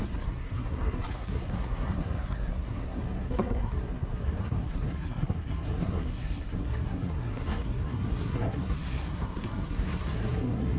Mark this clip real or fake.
fake